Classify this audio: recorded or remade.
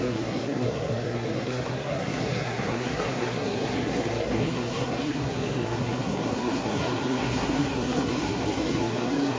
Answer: remade